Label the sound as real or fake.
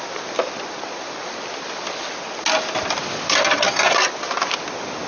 real